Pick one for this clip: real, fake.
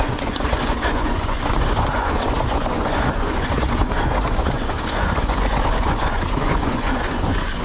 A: fake